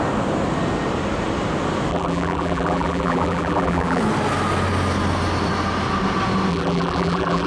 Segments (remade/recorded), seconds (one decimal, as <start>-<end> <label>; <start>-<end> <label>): 0.0-1.9 recorded; 1.9-4.0 remade; 4.0-6.5 recorded; 6.5-7.5 remade